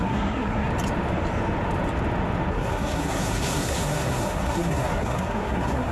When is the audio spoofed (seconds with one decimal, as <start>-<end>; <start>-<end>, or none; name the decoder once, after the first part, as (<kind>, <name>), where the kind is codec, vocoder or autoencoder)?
0.0-0.7 (codec, SNAC); 2.5-5.9